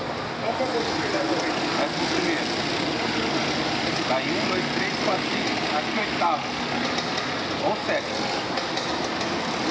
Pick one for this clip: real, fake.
real